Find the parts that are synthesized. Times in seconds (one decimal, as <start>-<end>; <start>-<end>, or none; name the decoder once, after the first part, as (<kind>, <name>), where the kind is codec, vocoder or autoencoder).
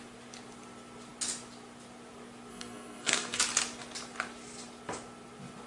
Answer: 2.5-3.4 (codec, SNAC)